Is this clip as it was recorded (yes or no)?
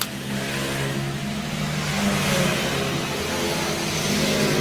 yes